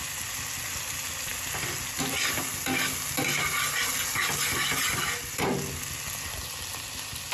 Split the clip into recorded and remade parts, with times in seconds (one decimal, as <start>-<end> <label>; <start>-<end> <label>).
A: 0.0-7.3 recorded